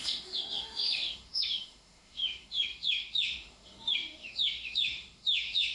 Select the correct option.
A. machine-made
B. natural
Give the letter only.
A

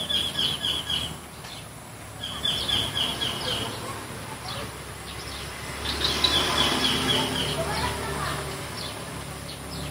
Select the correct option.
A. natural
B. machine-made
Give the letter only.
A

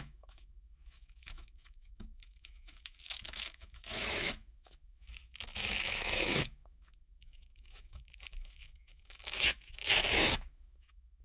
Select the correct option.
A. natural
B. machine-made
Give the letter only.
B